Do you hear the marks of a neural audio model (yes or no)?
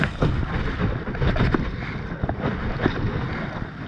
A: no